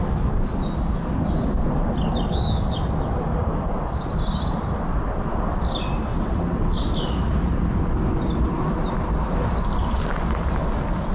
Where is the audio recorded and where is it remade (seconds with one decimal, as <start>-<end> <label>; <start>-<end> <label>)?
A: 0.0-6.1 recorded; 6.1-6.7 remade; 6.7-11.1 recorded